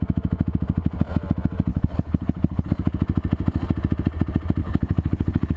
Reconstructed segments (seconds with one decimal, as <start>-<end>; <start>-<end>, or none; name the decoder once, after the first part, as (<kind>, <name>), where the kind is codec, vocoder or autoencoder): 1.7-2.7 (codec, HILCodec); 4.6-5.6